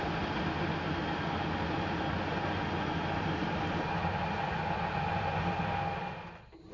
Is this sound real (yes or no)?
yes